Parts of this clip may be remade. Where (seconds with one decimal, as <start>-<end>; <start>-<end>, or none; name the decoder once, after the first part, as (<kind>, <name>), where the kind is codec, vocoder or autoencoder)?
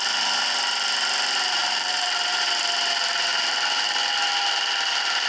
1.6-2.6 (vocoder, BigVGAN v2)